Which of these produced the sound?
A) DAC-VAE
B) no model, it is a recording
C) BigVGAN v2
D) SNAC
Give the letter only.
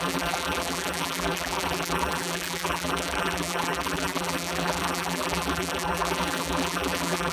C